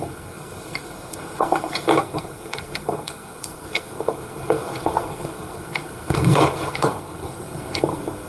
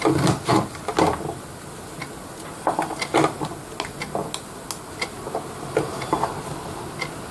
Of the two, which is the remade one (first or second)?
first